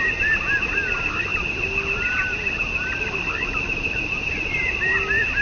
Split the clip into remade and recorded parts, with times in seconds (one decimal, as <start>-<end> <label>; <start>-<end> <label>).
0.0-1.3 remade; 1.3-3.0 recorded; 3.0-5.4 remade